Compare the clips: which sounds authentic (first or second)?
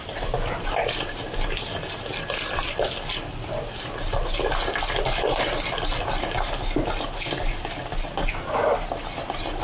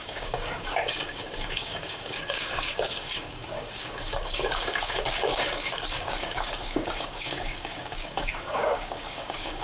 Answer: first